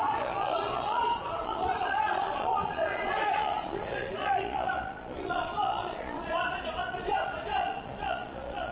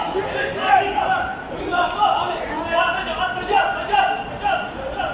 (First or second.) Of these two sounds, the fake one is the first